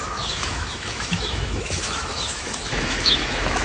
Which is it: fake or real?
fake